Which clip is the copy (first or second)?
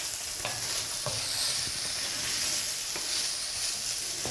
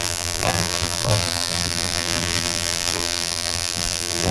second